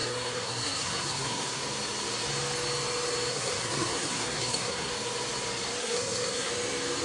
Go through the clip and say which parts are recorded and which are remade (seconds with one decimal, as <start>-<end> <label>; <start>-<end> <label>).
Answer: 0.0-1.6 remade; 1.6-3.3 recorded; 3.3-4.9 remade; 4.9-5.8 recorded; 5.8-6.5 remade; 6.5-7.0 recorded